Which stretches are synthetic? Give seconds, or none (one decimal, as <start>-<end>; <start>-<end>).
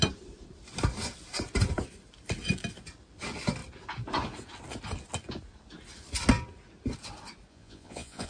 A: 7.5-8.3